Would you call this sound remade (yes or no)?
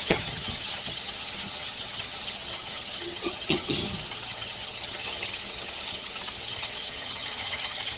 yes